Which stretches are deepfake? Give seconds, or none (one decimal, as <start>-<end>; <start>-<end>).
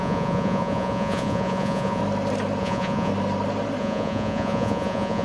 0.0-2.0; 2.6-3.1; 3.8-5.2